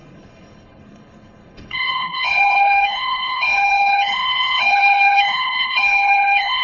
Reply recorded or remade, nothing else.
remade